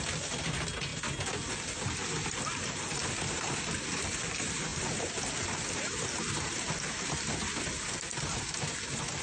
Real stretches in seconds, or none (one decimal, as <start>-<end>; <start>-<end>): 0.0-9.2